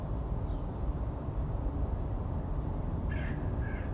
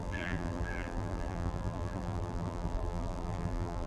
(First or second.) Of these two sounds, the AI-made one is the second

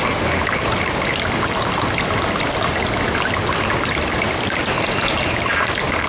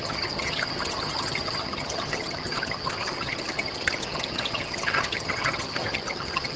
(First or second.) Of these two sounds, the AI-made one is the second